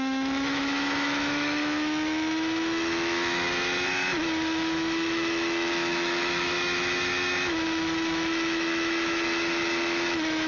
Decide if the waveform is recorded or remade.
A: remade